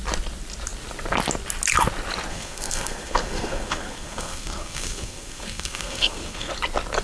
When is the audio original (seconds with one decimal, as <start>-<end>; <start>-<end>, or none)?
0.0-2.3; 6.5-7.0